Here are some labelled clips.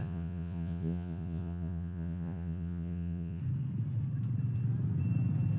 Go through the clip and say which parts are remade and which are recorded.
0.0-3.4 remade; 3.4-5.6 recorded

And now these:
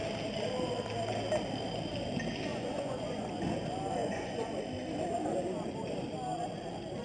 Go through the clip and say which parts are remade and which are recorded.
0.0-2.5 recorded; 2.5-3.3 remade; 3.3-4.0 recorded; 4.0-4.5 remade; 4.5-7.0 recorded

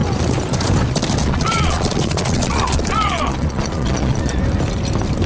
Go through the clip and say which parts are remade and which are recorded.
0.0-1.2 recorded; 1.2-4.4 remade; 4.4-5.3 recorded